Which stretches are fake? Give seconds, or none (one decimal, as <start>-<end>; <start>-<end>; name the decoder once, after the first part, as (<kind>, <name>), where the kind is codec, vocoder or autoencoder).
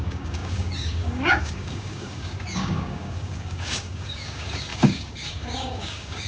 0.0-6.3 (codec, DAC)